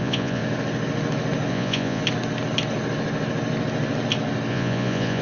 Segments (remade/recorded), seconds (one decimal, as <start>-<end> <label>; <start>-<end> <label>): 0.0-0.4 remade; 0.4-1.5 recorded; 1.5-2.0 remade; 2.0-4.5 recorded; 4.5-5.2 remade